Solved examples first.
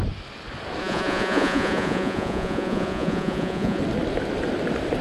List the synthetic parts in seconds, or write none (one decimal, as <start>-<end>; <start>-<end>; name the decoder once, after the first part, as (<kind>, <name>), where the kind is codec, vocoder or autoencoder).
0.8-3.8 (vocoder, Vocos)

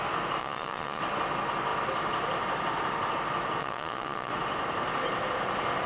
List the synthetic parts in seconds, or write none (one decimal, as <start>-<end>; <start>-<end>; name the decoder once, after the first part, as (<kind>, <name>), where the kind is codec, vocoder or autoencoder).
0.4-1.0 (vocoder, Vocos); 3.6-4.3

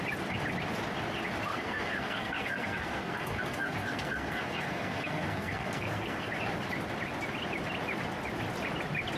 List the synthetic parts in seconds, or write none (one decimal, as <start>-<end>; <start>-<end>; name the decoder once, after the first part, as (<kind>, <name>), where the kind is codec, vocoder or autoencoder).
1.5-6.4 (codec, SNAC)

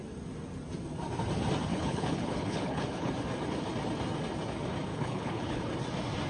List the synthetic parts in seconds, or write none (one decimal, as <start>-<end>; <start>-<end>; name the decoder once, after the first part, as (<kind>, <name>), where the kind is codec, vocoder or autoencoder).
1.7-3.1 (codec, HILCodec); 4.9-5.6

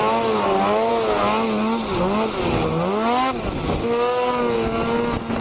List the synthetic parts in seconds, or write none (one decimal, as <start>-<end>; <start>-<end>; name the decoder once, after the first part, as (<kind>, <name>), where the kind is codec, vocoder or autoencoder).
none

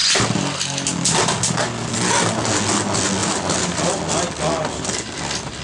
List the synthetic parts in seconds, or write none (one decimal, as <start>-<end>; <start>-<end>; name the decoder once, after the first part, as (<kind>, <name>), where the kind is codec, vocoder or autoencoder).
3.2-4.1 (vocoder, BigVGAN v2)